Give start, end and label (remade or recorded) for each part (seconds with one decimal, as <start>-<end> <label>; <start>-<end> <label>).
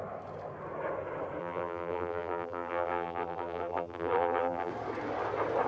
0.0-1.4 recorded; 1.4-4.7 remade; 4.7-5.7 recorded